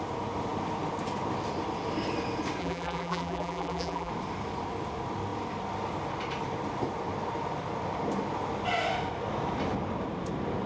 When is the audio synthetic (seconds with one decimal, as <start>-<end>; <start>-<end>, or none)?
2.6-4.1